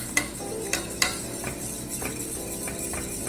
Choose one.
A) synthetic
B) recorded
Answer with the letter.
A